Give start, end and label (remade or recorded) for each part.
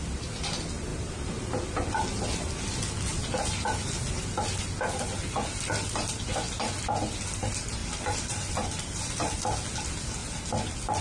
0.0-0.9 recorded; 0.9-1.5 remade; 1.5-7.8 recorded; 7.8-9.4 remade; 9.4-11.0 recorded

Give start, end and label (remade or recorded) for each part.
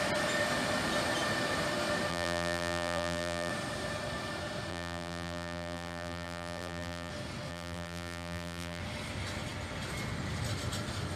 0.0-2.1 recorded; 2.1-3.5 remade; 3.5-4.7 recorded; 4.7-7.1 remade; 7.1-7.5 recorded; 7.5-8.8 remade; 8.8-11.2 recorded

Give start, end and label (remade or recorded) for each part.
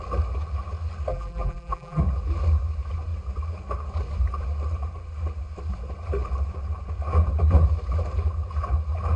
0.0-1.1 recorded; 1.1-2.0 remade; 2.0-9.2 recorded